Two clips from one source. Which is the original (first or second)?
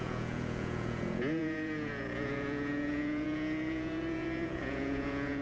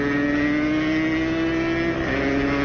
second